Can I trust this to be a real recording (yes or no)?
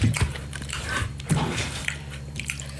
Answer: no